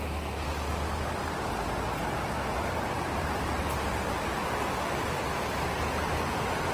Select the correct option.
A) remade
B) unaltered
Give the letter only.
B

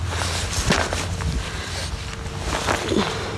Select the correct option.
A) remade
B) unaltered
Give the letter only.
B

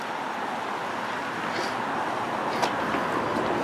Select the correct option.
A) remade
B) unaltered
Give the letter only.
B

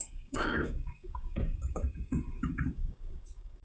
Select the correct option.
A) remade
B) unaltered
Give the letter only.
A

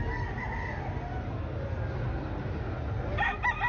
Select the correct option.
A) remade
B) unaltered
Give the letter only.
B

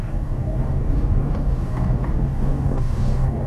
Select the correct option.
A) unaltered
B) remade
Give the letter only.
B